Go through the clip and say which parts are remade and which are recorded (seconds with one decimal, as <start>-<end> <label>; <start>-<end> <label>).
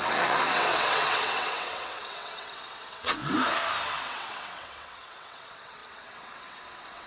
0.0-3.2 remade; 3.2-3.9 recorded; 3.9-7.1 remade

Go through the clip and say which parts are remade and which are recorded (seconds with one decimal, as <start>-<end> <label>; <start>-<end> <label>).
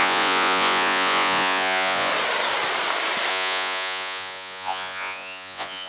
0.0-2.1 remade; 2.1-3.3 recorded; 3.3-5.9 remade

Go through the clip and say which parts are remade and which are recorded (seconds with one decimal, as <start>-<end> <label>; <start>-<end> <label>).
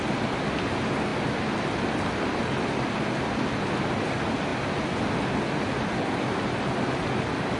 0.0-7.6 recorded